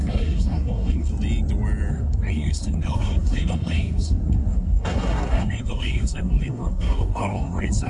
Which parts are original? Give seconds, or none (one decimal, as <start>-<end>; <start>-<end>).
1.1-1.9